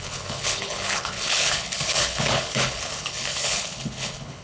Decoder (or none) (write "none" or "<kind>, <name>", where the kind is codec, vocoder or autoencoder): codec, HILCodec